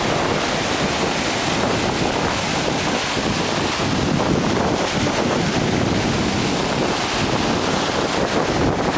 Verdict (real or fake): real